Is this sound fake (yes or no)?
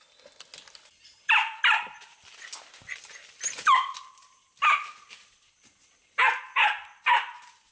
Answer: no